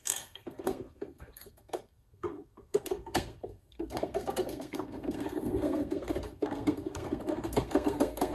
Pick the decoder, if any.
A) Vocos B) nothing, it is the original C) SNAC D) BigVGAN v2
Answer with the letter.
C